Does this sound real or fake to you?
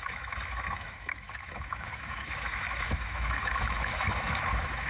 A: fake